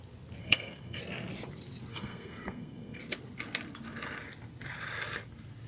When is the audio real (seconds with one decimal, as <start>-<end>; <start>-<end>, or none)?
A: 0.0-0.4; 1.0-1.9; 3.0-5.7